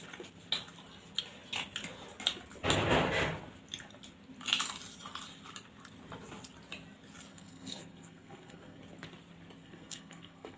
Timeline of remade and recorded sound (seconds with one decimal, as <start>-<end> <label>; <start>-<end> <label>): 0.0-7.3 recorded; 7.3-8.8 remade; 8.8-9.6 recorded; 9.6-10.6 remade